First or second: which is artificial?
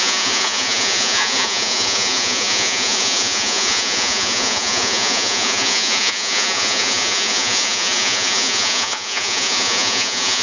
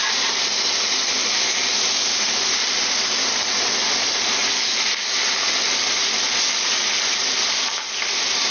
first